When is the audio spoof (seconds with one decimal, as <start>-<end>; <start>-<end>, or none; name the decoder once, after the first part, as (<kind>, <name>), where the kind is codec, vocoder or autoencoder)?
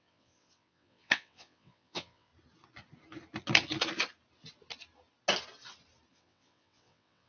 0.0-2.3 (vocoder, WaveNeXt); 6.1-7.3